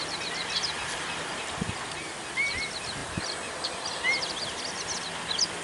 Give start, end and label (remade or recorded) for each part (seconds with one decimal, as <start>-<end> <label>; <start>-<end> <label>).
0.0-5.6 recorded